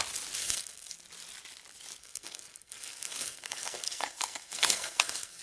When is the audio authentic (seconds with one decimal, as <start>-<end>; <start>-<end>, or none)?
0.0-0.4; 1.0-2.0